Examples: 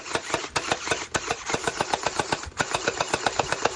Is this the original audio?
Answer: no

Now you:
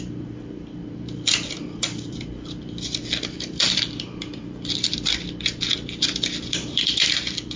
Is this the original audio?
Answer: no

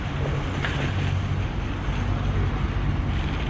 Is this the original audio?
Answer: yes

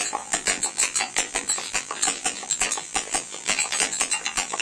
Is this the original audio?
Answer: no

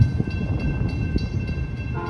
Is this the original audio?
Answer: yes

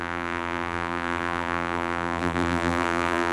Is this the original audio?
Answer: no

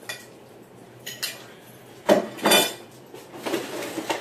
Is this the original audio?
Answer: yes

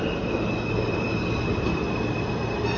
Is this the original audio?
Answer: yes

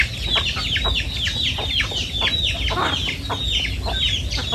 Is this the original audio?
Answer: yes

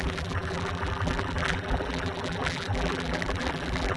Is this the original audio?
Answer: no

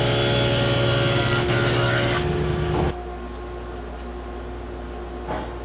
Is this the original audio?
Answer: yes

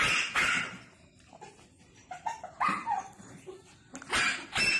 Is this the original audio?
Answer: yes